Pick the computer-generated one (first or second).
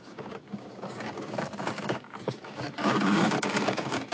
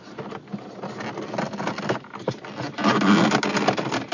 first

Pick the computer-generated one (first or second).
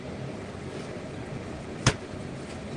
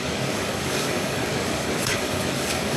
second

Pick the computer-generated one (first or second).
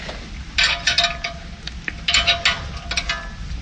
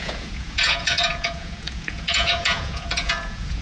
second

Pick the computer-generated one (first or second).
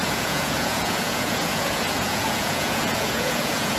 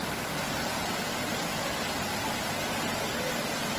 first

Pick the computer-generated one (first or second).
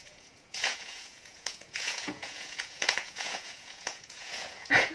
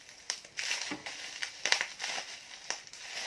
first